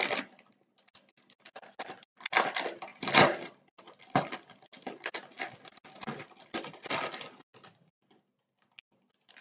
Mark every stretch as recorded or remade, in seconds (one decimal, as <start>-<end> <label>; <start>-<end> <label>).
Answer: 0.0-9.4 recorded